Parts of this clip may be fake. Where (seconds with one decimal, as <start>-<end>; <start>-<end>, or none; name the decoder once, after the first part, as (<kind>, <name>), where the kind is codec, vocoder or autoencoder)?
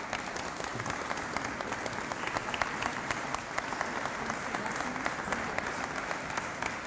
none